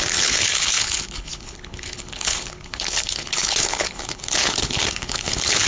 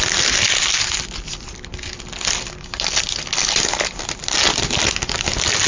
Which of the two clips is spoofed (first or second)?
first